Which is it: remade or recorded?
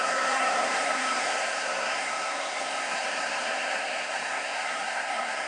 remade